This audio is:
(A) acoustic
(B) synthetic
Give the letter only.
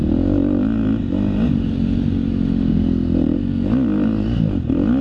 A